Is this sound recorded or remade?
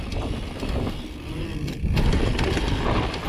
recorded